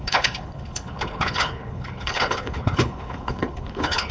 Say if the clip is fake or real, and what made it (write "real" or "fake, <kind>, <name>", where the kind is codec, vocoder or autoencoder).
fake, codec, HILCodec